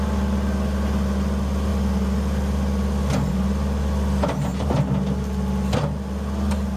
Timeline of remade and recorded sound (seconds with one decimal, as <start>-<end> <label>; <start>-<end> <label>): 0.0-6.8 recorded